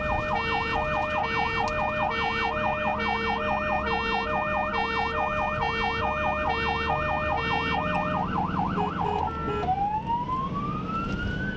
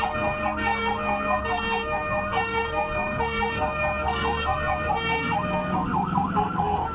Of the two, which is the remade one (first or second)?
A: second